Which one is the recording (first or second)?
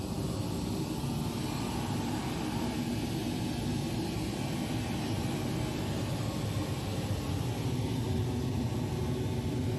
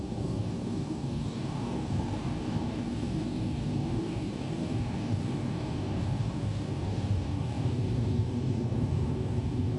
first